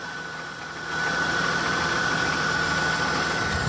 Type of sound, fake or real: real